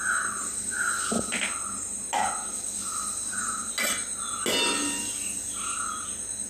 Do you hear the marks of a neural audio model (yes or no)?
no